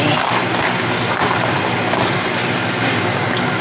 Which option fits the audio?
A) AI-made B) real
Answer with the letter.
B